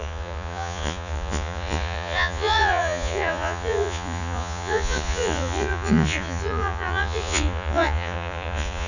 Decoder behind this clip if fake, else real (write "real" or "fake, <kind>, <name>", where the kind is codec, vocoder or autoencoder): fake, vocoder, Vocos